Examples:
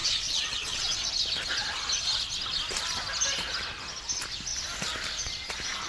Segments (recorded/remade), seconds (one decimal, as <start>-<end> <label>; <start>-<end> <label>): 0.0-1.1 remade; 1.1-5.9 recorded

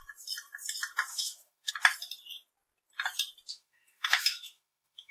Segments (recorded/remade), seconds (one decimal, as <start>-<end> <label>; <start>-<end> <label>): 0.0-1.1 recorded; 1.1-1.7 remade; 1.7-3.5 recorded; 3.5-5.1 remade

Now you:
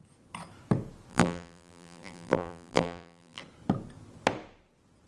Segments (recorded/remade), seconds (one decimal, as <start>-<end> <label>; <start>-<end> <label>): 0.0-1.1 recorded; 1.1-3.4 remade; 3.4-5.1 recorded

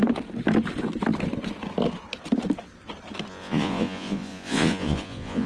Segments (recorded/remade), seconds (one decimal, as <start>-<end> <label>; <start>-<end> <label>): 0.0-3.3 recorded; 3.3-5.5 remade

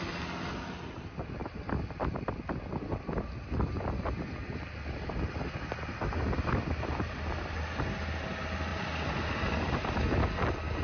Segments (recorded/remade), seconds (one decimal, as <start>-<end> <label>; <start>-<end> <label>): 0.0-10.8 recorded

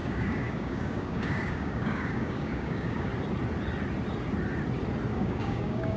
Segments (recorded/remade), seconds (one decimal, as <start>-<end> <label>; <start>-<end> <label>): 0.0-3.1 remade; 3.1-5.1 recorded; 5.1-6.0 remade

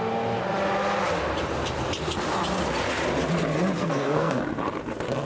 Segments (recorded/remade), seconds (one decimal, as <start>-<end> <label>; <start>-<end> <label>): 0.0-3.8 recorded; 3.8-4.4 remade; 4.4-5.3 recorded